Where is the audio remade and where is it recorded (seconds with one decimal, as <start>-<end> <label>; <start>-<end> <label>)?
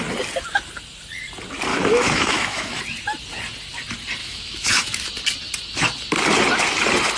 0.0-1.7 recorded; 1.7-2.8 remade; 2.8-4.2 recorded; 4.2-5.1 remade; 5.1-7.2 recorded